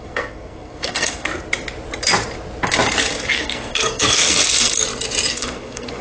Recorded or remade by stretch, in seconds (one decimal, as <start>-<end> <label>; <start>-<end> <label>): 0.0-1.3 remade; 1.3-3.3 recorded; 3.3-4.8 remade; 4.8-5.3 recorded; 5.3-6.0 remade